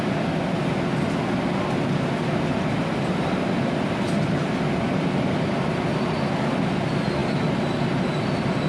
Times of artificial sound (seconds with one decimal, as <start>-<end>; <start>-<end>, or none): none